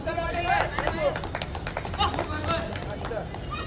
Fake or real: real